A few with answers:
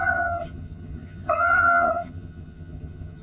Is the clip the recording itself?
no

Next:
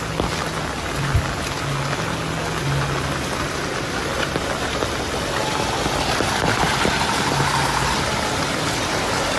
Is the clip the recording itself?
yes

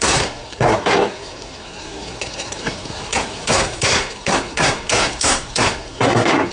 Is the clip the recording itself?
no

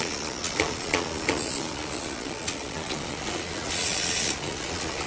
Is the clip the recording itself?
no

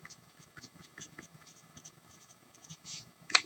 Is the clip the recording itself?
no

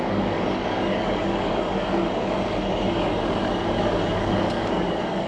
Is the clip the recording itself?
no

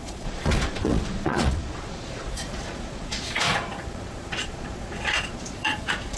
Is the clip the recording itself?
no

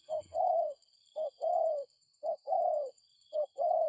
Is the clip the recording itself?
no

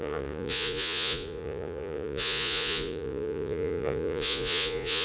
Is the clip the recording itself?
no